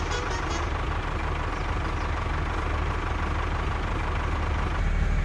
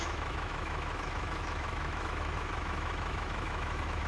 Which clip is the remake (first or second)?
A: second